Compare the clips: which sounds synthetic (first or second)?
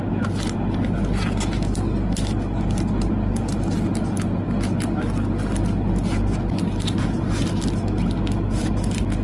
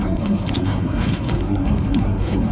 second